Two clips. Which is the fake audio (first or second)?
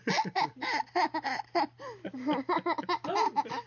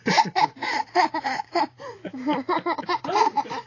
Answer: second